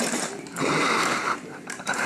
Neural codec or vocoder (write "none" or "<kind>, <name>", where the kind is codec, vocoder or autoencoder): vocoder, BigVGAN v2